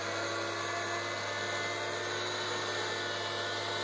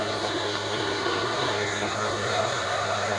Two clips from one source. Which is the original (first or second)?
first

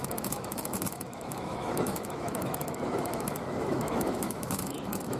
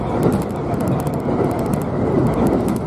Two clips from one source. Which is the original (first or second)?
second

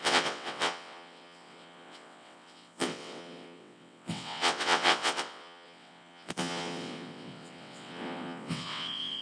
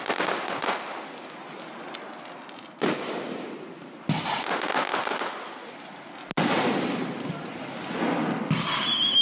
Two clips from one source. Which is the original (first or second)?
second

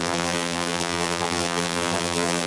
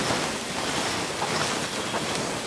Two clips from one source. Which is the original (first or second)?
second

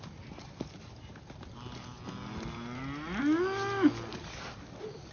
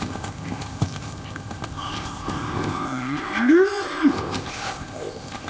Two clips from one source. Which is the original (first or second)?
first